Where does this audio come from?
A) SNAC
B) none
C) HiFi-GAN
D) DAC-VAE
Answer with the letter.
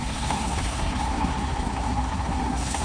A